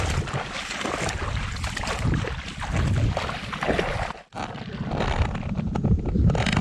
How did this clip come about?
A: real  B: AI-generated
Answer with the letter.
A